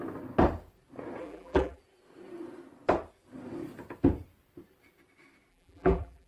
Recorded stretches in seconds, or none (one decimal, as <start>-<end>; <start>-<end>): 0.0-1.2; 1.8-5.5

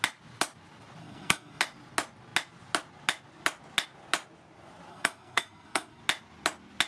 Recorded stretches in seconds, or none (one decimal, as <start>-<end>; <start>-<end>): 0.0-1.0; 1.6-4.9; 6.0-6.9

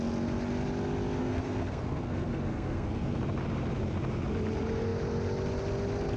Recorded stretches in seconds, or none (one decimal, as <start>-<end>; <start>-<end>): 0.0-1.2; 3.2-6.2

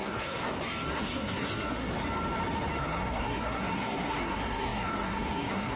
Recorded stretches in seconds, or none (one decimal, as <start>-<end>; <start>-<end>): 0.4-0.9; 1.9-2.8

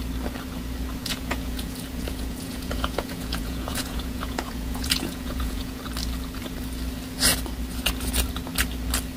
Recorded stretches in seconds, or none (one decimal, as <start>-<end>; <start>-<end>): 0.0-1.0; 5.8-9.2